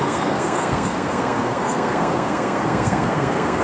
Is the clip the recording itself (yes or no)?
no